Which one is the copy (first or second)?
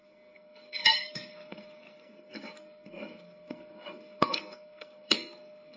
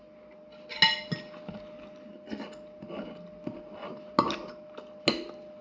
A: first